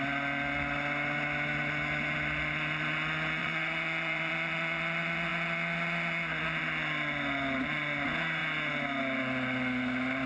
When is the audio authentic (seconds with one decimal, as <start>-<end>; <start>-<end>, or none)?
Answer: 0.0-3.4; 4.3-10.3